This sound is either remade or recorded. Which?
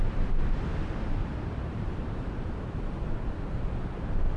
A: remade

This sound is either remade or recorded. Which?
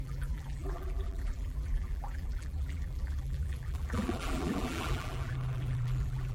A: remade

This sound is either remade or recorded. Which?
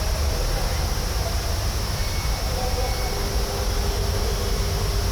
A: recorded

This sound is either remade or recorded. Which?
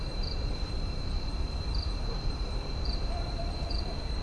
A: remade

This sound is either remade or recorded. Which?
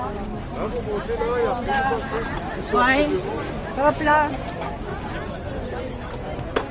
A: recorded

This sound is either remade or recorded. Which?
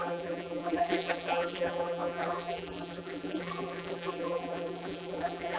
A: remade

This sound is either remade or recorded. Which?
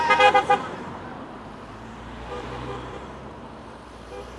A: remade